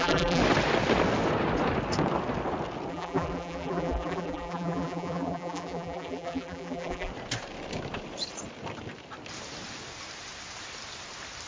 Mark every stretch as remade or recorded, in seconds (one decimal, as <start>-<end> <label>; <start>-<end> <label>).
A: 0.0-0.4 remade; 0.4-2.9 recorded; 2.9-7.1 remade; 7.1-11.5 recorded